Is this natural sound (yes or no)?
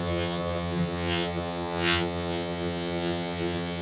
no